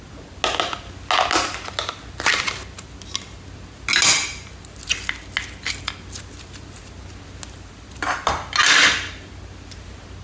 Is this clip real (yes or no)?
yes